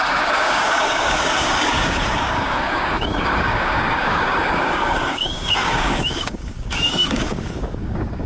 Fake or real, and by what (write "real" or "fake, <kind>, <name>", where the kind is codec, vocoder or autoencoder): fake, codec, DAC